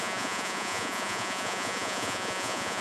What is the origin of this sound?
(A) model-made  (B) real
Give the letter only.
A